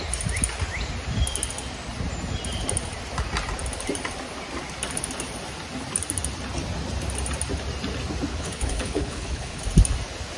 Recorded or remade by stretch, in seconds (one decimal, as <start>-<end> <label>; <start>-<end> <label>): 0.0-8.3 recorded; 8.3-9.6 remade; 9.6-10.4 recorded